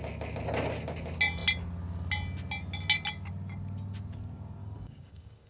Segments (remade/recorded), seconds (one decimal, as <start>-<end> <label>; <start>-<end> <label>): 0.0-4.6 recorded; 4.6-5.5 remade